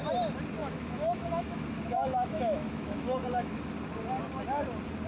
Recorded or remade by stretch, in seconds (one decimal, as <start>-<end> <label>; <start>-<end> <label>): 0.0-0.6 recorded; 0.6-3.7 remade; 3.7-5.1 recorded